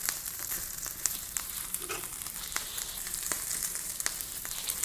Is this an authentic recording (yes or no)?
no